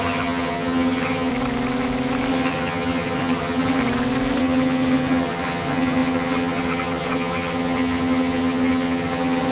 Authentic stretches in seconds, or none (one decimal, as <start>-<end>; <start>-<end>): 1.3-2.3; 3.8-4.4